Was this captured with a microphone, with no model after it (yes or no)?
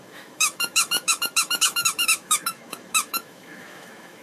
no